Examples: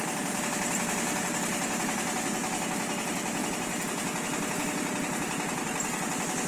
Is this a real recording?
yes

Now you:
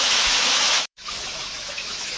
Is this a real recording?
no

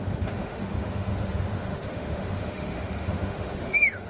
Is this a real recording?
no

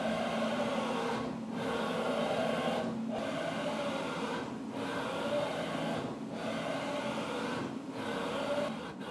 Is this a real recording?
yes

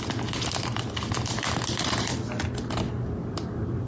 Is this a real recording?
yes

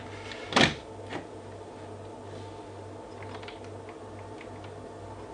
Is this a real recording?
yes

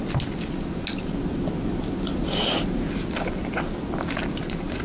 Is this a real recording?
yes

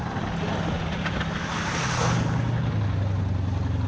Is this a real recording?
yes